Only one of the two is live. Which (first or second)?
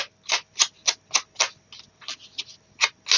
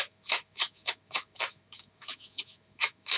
first